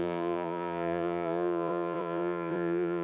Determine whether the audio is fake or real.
fake